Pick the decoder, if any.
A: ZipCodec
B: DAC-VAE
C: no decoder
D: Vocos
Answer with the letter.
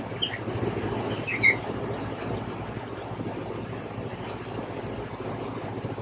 C